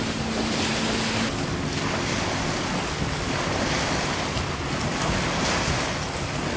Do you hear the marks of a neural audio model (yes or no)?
no